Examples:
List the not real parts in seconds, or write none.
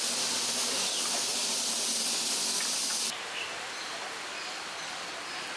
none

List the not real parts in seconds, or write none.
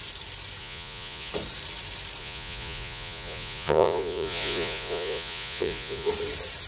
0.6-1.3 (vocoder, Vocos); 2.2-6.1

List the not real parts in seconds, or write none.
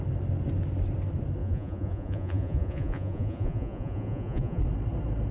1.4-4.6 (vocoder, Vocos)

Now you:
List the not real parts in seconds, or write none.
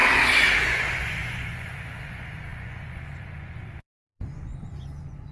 0.6-5.3 (vocoder, Vocos)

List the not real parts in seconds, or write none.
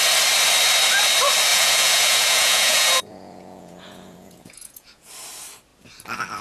1.5-5.1 (vocoder, Vocos)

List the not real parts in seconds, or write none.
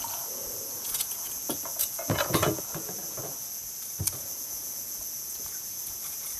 0.0-3.6 (vocoder, Vocos); 4.2-6.4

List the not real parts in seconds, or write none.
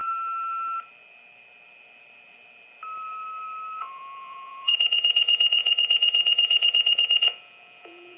3.8-8.2 (vocoder, Vocos)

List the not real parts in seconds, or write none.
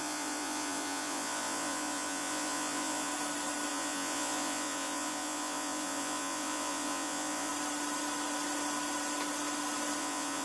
0.0-3.1 (vocoder, Vocos); 3.7-7.5; 10.0-10.4